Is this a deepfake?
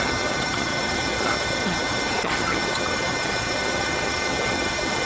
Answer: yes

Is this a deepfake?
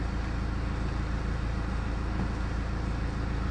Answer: no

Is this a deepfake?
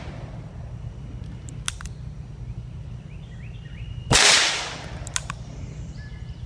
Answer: no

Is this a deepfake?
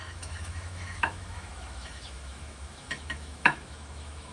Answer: yes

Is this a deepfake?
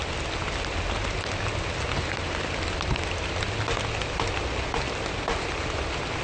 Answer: no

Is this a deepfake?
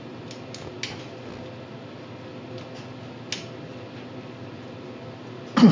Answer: no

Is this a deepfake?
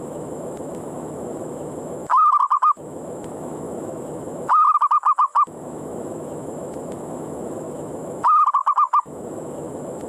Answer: yes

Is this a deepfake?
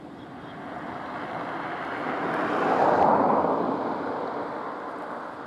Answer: no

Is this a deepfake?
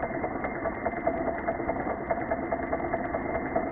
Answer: no